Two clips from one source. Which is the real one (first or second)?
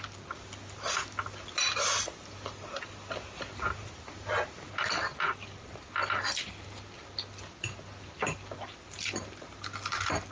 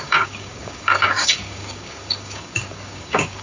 first